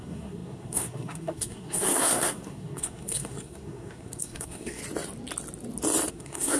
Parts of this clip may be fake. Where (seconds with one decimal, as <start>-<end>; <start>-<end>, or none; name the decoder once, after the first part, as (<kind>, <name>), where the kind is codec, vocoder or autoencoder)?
0.0-4.8 (codec, SNAC); 6.1-6.6